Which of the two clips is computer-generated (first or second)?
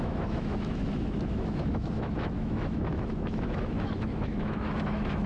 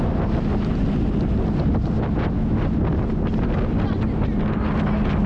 first